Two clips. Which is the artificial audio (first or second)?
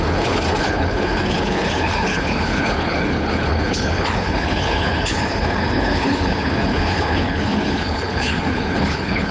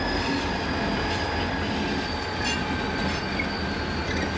first